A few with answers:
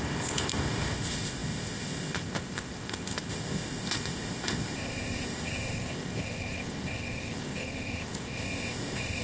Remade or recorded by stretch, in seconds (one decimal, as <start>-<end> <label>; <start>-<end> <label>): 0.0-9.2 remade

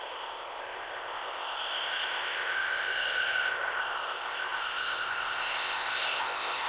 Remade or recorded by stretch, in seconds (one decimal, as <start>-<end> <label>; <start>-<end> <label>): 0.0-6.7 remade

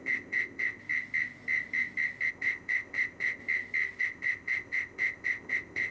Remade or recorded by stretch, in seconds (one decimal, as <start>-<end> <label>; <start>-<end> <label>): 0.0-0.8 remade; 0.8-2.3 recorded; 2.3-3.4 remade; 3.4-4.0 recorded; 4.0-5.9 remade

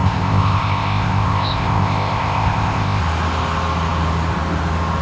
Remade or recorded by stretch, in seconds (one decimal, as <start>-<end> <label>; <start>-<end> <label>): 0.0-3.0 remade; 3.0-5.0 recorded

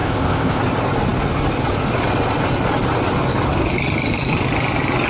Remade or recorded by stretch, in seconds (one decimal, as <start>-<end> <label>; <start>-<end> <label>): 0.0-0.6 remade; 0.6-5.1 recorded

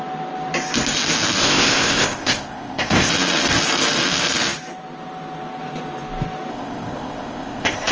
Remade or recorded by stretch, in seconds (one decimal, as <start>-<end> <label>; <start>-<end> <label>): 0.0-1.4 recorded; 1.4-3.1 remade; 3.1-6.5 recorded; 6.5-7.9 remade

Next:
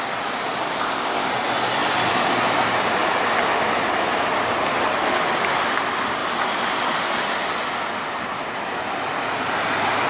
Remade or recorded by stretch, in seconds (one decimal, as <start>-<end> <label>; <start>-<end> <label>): 0.0-0.8 recorded; 0.8-1.3 remade; 1.3-10.1 recorded

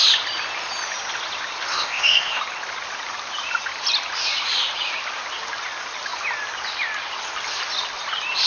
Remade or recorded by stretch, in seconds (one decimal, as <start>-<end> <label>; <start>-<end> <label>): 0.0-1.7 recorded; 1.7-2.4 remade; 2.4-8.5 recorded